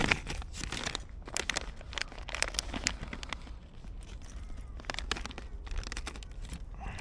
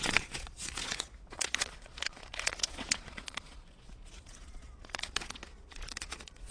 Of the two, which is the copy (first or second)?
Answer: second